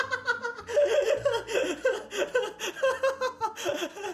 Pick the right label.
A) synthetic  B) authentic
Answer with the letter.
B